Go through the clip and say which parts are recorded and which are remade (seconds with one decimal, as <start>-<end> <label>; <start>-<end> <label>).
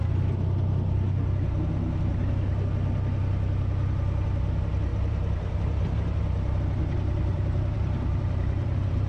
0.0-4.9 recorded; 4.9-6.6 remade; 6.6-7.3 recorded; 7.3-9.1 remade